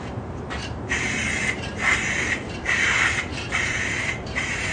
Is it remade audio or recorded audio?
remade